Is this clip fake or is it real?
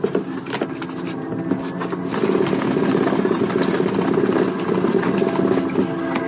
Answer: real